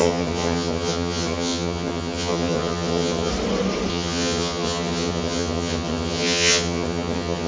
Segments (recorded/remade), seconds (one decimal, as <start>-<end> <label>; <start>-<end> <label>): 0.0-3.3 remade; 3.3-3.9 recorded; 3.9-7.5 remade